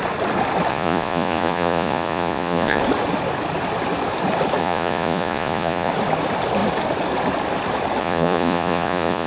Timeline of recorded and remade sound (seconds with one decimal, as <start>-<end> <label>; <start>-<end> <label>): 0.0-0.7 recorded; 0.7-2.8 remade; 2.8-4.6 recorded; 4.6-5.9 remade; 5.9-8.0 recorded; 8.0-9.3 remade